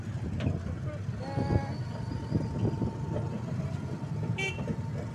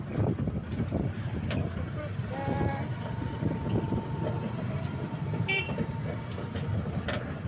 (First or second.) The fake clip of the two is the second